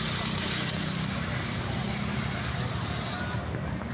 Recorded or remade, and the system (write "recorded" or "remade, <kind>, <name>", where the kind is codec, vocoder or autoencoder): recorded